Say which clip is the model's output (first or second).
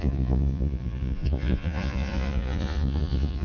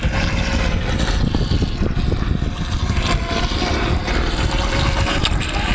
first